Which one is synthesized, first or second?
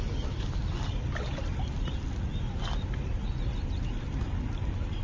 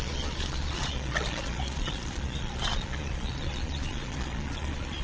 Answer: second